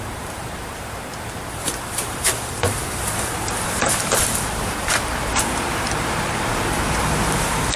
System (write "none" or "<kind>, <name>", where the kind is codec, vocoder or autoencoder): vocoder, BigVGAN v2